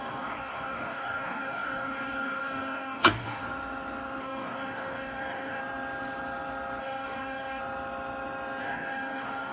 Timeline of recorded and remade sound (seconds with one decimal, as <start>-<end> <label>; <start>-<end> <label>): 0.0-3.4 remade; 3.4-4.2 recorded; 4.2-5.6 remade; 5.6-6.8 recorded; 6.8-7.6 remade; 7.6-8.6 recorded; 8.6-9.5 remade